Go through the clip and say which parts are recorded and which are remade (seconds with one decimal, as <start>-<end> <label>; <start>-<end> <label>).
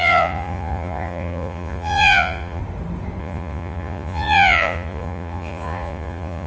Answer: 0.0-2.6 remade; 2.6-3.2 recorded; 3.2-6.5 remade